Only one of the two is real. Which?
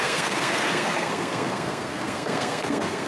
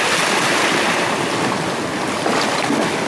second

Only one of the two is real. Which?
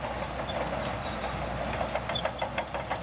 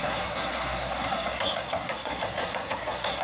first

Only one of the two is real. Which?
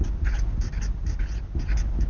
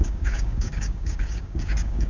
first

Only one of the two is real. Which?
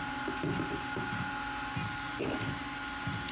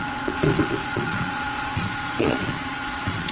first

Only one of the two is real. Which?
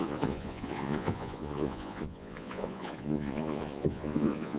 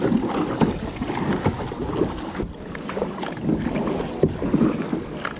second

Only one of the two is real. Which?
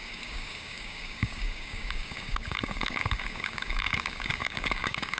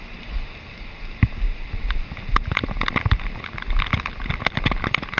second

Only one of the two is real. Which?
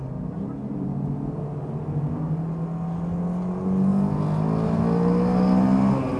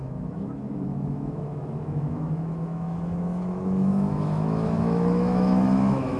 first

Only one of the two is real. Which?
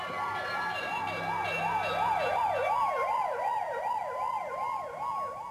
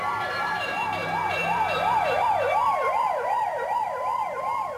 first